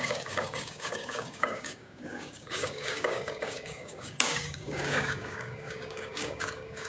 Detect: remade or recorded remade